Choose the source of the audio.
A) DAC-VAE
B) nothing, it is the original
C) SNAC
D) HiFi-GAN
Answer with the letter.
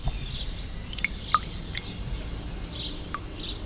B